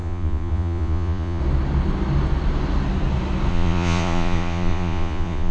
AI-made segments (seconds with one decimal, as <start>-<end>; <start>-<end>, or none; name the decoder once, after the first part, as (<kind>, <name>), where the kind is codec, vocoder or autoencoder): 0.0-1.4 (vocoder, Vocos); 3.5-5.5